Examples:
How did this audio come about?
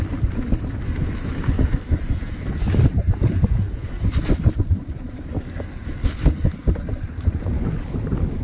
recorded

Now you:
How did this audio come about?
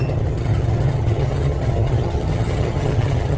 remade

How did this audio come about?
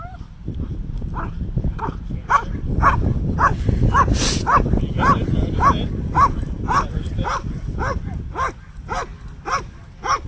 recorded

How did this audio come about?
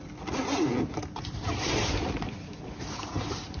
recorded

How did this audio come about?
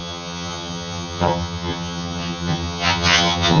remade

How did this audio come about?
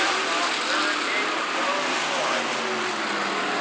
recorded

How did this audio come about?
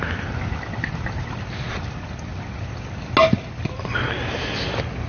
recorded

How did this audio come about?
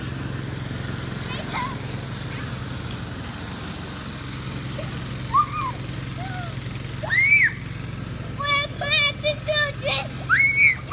recorded